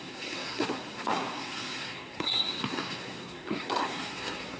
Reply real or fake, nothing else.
fake